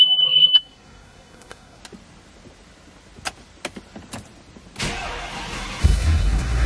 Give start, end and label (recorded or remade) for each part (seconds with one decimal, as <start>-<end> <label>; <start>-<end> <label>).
0.0-1.8 remade; 1.8-5.8 recorded; 5.8-6.7 remade